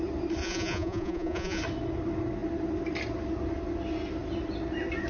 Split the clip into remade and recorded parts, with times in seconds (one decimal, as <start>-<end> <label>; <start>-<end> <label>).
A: 0.0-0.4 recorded; 0.4-1.6 remade; 1.6-5.1 recorded